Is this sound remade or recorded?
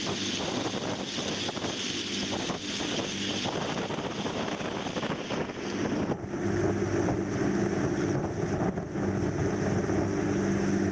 recorded